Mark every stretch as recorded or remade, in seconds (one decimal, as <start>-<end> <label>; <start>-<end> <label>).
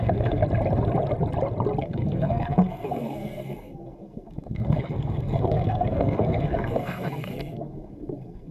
0.0-0.4 remade; 0.4-1.8 recorded; 1.8-8.5 remade